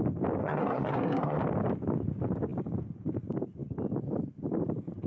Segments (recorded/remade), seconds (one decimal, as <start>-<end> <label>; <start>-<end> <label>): 0.0-0.4 recorded; 0.4-1.4 remade; 1.4-5.1 recorded